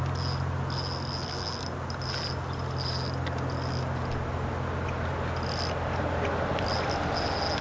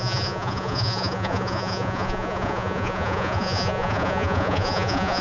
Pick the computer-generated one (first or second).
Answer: second